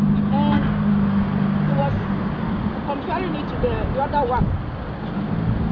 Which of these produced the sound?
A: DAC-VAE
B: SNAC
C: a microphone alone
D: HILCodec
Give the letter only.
C